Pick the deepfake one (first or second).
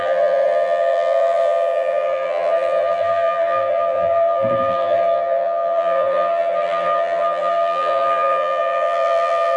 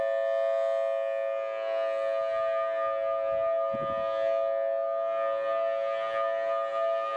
first